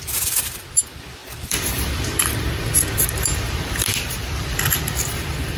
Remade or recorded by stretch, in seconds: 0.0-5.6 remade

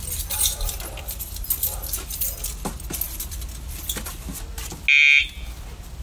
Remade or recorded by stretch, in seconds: 0.0-6.0 recorded

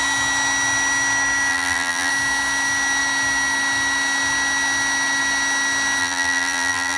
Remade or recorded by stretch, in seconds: 0.0-1.5 recorded; 1.5-2.1 remade; 2.1-6.0 recorded; 6.0-7.0 remade